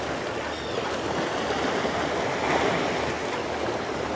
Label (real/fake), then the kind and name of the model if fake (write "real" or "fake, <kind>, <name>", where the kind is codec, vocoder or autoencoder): real